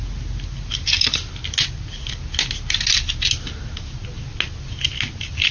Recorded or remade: recorded